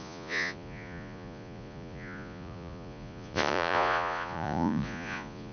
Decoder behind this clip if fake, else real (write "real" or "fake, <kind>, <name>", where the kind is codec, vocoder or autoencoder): fake, vocoder, Vocos